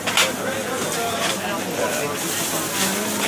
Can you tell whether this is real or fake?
real